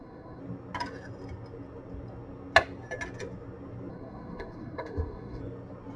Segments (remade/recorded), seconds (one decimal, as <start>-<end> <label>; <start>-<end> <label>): 0.0-0.4 remade; 0.4-3.9 recorded; 3.9-5.4 remade; 5.4-6.0 recorded